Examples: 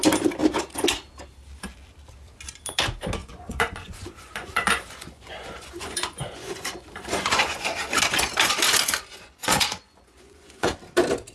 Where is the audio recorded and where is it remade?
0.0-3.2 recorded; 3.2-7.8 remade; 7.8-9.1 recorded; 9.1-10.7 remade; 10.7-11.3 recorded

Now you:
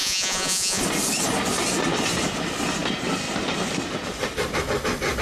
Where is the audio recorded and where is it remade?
0.0-0.8 remade; 0.8-5.2 recorded

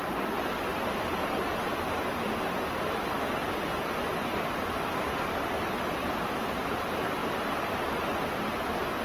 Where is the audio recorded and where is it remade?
0.0-0.7 remade; 0.7-3.9 recorded; 3.9-7.2 remade; 7.2-9.0 recorded

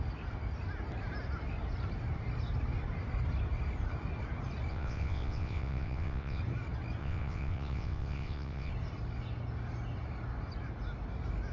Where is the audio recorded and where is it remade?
0.0-4.7 recorded; 4.7-6.4 remade; 6.4-7.0 recorded; 7.0-8.7 remade; 8.7-11.5 recorded

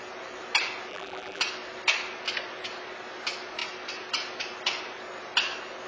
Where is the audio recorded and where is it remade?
0.0-0.9 recorded; 0.9-1.4 remade; 1.4-5.9 recorded